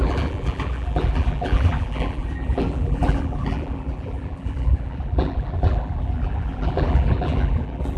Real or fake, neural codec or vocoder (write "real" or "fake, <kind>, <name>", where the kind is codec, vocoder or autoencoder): fake, vocoder, BigVGAN v2